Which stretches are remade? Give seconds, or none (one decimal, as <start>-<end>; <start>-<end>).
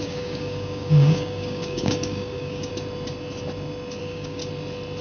0.0-2.7; 4.0-4.4